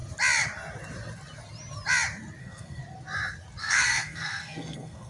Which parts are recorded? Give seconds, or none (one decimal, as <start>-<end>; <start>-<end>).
0.0-2.4; 2.8-3.6